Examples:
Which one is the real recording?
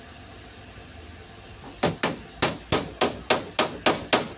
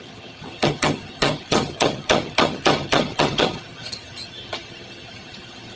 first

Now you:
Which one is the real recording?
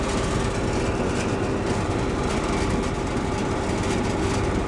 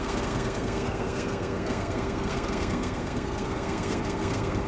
first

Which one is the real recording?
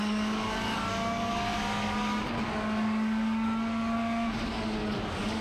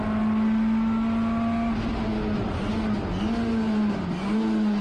second